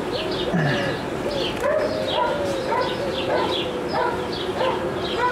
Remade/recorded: recorded